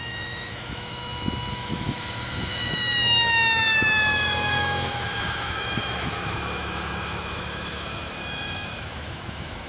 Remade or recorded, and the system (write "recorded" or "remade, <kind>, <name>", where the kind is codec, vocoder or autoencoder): remade, autoencoder, DAC-VAE